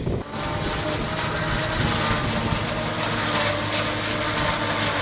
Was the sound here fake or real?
real